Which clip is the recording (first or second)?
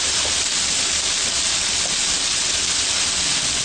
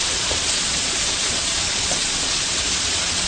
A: first